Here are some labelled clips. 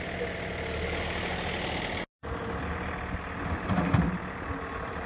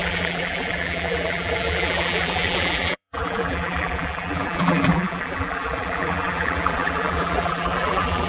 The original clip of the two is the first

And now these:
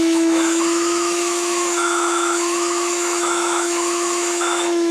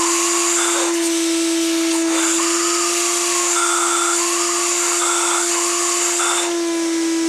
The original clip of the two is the second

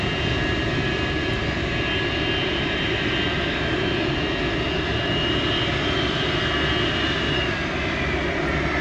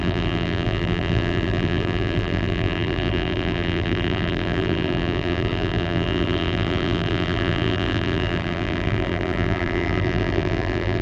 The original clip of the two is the first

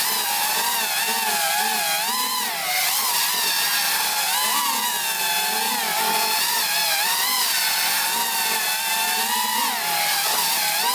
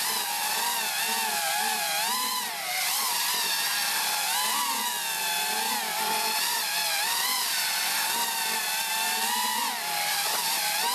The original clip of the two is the first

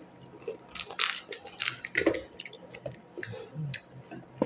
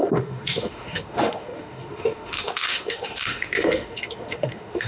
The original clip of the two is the first